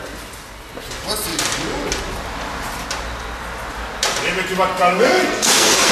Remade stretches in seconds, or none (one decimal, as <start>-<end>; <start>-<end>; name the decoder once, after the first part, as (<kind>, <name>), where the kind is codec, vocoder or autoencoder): 4.7-5.9 (codec, SNAC)